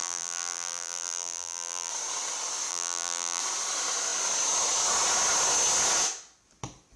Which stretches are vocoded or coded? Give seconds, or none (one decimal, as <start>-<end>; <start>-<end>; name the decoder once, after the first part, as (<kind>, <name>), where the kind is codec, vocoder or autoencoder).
0.0-1.9 (vocoder, BigVGAN v2); 2.7-3.4